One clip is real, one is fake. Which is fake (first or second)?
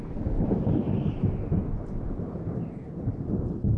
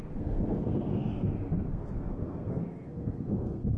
second